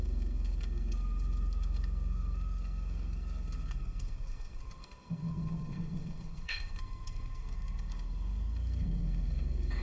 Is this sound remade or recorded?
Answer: remade